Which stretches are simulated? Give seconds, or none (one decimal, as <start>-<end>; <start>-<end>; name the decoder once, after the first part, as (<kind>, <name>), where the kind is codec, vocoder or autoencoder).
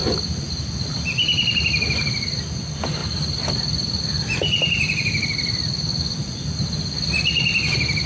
none